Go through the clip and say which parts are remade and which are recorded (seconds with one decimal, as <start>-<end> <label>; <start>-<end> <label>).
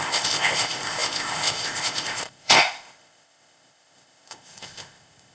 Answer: 0.0-5.3 remade